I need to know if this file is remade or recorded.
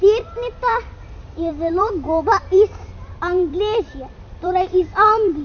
remade